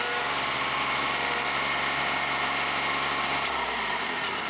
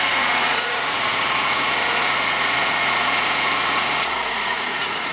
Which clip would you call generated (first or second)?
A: second